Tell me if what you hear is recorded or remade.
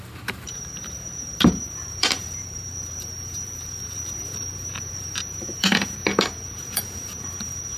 remade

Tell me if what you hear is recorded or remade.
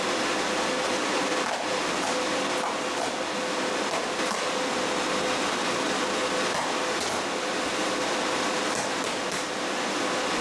recorded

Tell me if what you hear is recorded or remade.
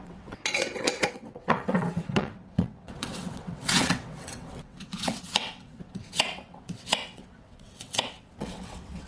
remade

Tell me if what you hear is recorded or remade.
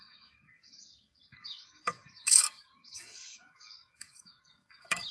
remade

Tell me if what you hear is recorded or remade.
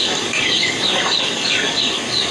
remade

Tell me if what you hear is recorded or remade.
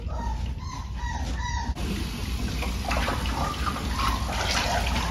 recorded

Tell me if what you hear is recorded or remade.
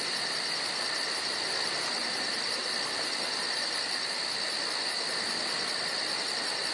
recorded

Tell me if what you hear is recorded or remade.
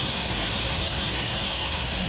remade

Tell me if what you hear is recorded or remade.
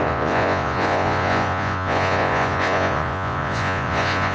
remade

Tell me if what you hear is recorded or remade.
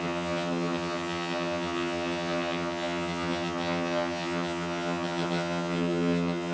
remade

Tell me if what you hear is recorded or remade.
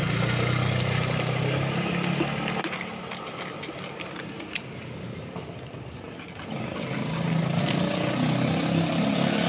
recorded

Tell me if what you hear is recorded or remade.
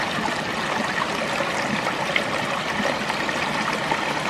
recorded